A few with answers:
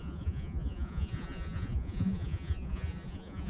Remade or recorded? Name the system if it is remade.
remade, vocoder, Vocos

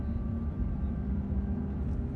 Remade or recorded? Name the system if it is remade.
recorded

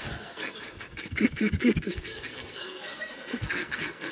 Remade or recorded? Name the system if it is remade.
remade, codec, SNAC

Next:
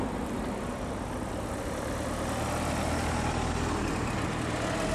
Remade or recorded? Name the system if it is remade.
recorded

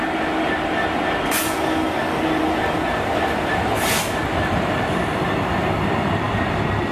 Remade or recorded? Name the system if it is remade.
recorded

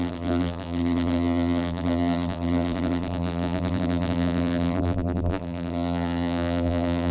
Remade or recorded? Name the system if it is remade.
remade, vocoder, BigVGAN v2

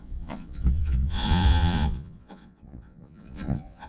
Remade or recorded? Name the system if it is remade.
remade, vocoder, Vocos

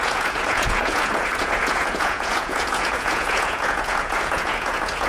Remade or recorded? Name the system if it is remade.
remade, vocoder, Vocos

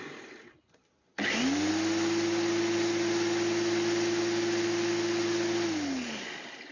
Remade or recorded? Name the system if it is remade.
recorded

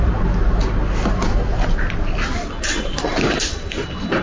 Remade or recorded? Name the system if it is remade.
recorded